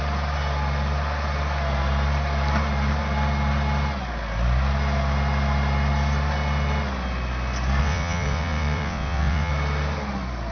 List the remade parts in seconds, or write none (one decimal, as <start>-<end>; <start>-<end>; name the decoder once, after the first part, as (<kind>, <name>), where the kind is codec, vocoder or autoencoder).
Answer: 7.8-9.5 (vocoder, WaveNeXt)